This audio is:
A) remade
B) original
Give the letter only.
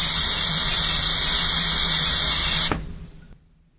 B